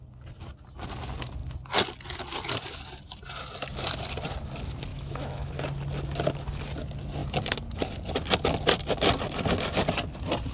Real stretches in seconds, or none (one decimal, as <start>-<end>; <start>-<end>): 0.0-4.9; 5.5-10.5